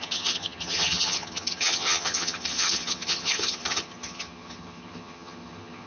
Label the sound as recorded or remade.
remade